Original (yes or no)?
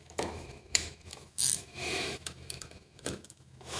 no